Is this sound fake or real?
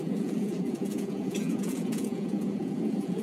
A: fake